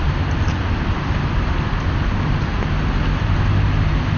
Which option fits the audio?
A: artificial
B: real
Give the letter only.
B